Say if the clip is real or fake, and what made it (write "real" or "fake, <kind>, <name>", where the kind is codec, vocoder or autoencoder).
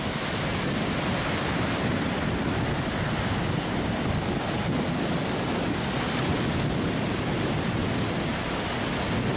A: real